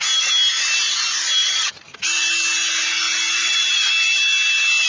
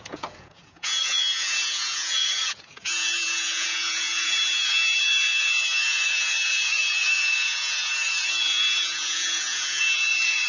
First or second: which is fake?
second